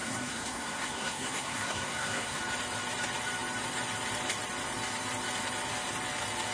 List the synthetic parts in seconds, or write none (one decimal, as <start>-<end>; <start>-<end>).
0.0-2.4